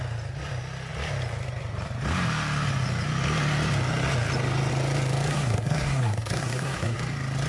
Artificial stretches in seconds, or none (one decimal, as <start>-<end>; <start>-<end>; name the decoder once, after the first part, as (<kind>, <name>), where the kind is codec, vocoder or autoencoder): 5.3-7.0 (codec, SNAC)